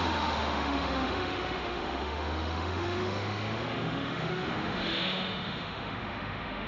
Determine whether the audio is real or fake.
fake